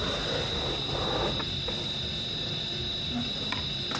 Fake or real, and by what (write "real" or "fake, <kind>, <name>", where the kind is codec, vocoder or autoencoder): real